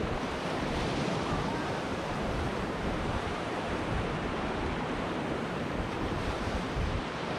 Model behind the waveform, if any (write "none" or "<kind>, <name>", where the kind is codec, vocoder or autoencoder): vocoder, BigVGAN v2